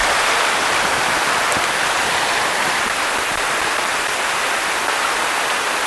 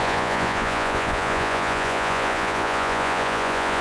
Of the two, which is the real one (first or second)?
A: first